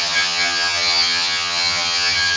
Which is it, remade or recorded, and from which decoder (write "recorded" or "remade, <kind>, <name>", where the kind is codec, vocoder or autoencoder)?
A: remade, vocoder, HiFi-GAN